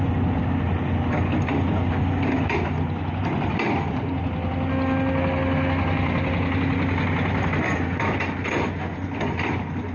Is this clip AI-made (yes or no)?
no